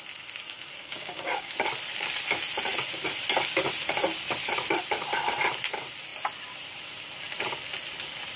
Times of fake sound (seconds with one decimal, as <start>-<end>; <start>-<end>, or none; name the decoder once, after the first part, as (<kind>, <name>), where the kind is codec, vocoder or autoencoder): 0.8-1.5 (codec, DAC)